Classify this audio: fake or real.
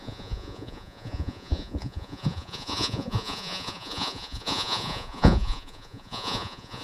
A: fake